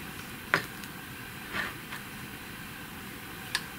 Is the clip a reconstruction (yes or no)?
no